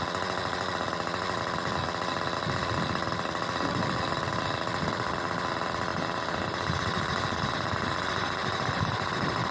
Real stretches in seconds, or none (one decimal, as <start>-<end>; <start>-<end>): 0.0-5.9